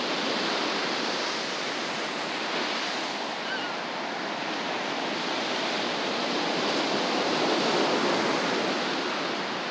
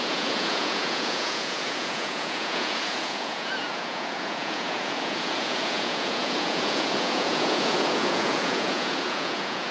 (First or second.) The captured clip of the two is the first